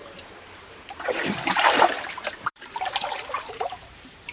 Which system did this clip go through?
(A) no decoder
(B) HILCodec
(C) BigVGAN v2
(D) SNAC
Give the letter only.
C